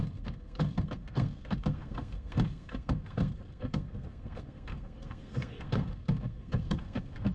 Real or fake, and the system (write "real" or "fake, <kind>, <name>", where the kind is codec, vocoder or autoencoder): fake, codec, SNAC